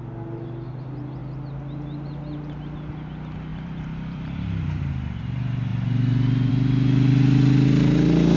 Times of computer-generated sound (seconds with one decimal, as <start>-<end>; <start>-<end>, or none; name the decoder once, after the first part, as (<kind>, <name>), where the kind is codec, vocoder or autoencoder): 3.5-4.9 (vocoder, BigVGAN v2)